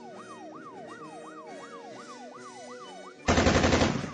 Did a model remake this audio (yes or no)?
no